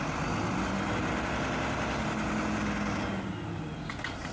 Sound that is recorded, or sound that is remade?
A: recorded